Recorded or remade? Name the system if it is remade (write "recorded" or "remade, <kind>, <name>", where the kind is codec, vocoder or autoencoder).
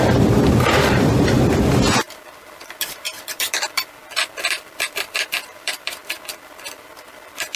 remade, vocoder, BigVGAN v2